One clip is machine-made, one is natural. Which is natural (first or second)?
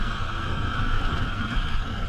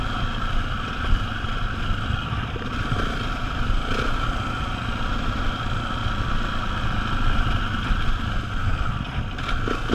second